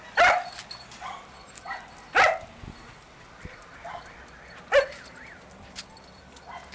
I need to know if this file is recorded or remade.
recorded